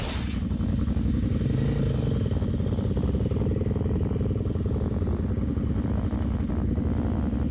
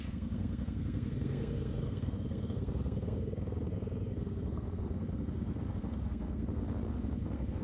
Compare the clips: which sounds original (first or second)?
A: first